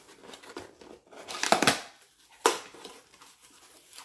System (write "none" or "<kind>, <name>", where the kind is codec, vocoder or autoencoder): vocoder, BigVGAN v2